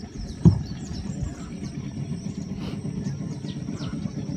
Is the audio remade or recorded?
remade